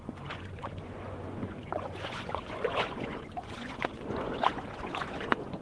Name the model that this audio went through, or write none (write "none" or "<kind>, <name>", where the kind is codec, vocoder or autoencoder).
vocoder, Vocos